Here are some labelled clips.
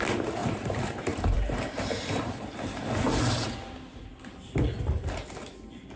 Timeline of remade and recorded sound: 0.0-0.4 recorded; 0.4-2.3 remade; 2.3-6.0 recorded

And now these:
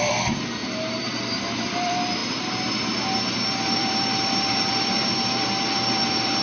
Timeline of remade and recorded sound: 0.0-0.6 remade; 0.6-1.2 recorded; 1.2-2.2 remade; 2.2-3.6 recorded; 3.6-6.4 remade

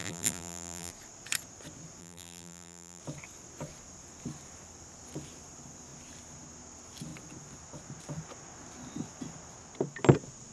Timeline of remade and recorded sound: 0.0-0.9 remade; 0.9-2.0 recorded; 2.0-3.0 remade; 3.0-10.5 recorded

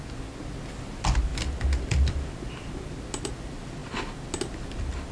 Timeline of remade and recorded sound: 0.0-5.1 recorded

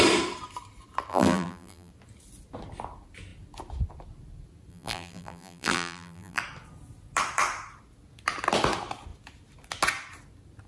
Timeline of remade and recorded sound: 0.0-1.1 recorded; 1.1-1.9 remade; 1.9-4.7 recorded; 4.7-6.4 remade; 6.4-10.7 recorded